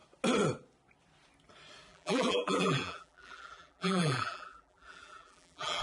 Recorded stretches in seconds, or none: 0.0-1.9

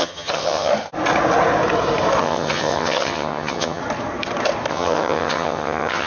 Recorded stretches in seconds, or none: 0.7-2.2; 3.8-4.7

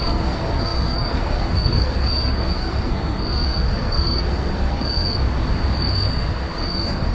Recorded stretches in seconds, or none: 5.2-5.9

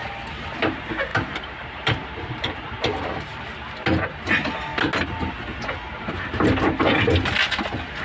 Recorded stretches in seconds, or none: 0.0-1.1; 3.4-8.0

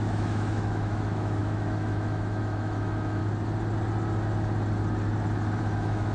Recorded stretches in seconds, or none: 3.2-5.6